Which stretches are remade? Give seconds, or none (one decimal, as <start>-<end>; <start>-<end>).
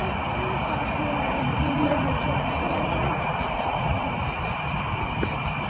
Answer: 1.5-4.1